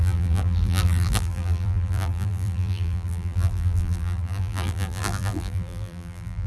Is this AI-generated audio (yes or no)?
yes